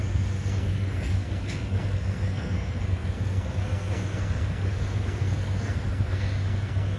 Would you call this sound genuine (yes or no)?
no